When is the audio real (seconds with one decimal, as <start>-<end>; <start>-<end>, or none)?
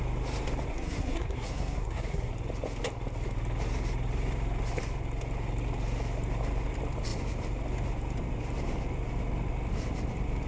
0.0-0.7; 2.3-10.5